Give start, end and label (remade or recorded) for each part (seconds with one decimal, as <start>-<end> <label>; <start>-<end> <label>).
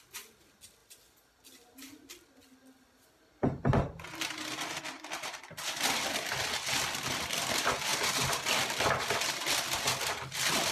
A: 0.0-10.7 recorded